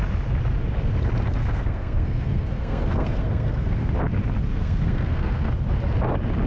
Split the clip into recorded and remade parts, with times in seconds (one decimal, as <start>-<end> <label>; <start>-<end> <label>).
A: 0.0-1.4 recorded; 1.4-3.9 remade; 3.9-4.5 recorded; 4.5-5.5 remade; 5.5-6.5 recorded